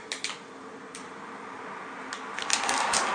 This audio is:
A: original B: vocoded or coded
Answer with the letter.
A